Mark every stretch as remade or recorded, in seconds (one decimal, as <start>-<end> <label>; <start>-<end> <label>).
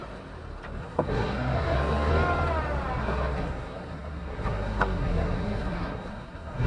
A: 0.0-0.8 recorded; 0.8-2.1 remade; 2.1-3.0 recorded; 3.0-6.7 remade